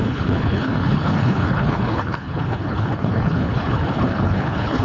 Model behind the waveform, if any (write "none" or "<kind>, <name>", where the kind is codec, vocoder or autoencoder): codec, HILCodec